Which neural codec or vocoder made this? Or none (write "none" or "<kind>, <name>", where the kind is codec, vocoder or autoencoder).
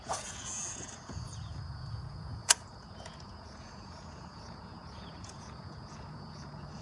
vocoder, Vocos